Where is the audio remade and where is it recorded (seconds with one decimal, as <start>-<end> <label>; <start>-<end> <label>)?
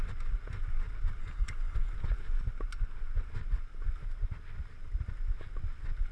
0.0-1.2 recorded; 1.2-1.9 remade; 1.9-6.1 recorded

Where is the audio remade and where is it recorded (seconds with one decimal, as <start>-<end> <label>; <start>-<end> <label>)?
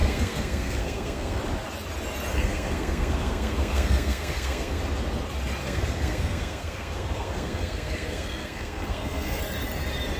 0.0-1.4 remade; 1.4-2.3 recorded; 2.3-4.8 remade; 4.8-5.6 recorded; 5.6-9.4 remade; 9.4-10.2 recorded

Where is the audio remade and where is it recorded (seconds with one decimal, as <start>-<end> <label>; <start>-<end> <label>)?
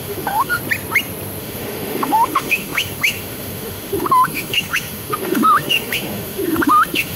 0.0-0.6 remade; 0.6-1.4 recorded; 1.4-7.2 remade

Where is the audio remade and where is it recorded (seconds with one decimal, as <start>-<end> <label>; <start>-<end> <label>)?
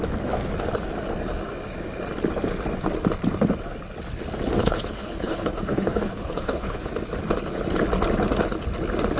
0.0-4.6 recorded; 4.6-6.9 remade; 6.9-9.2 recorded